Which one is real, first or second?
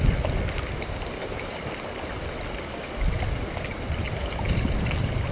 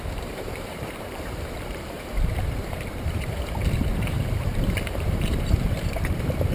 first